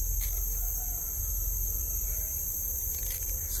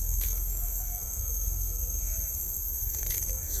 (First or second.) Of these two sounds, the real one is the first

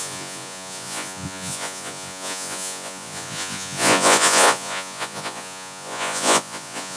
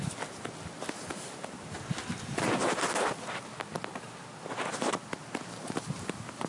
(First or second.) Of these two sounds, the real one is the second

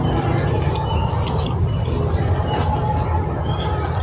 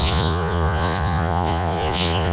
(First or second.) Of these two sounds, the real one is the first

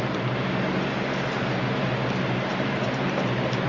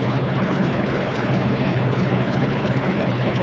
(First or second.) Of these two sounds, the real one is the first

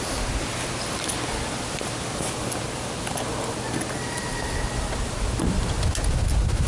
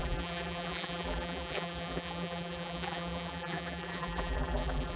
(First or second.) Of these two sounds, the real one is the first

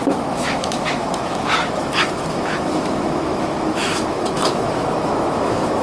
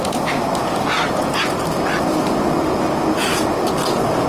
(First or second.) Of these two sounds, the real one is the second